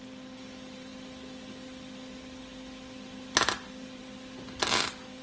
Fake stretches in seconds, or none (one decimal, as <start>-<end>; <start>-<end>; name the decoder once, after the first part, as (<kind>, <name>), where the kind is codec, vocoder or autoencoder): none